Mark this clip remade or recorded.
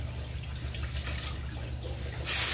recorded